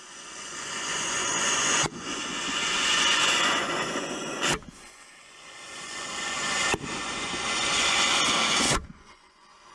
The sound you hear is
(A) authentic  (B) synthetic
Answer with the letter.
B